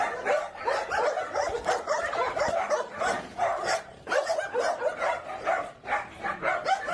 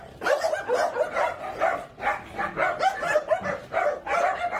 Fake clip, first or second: first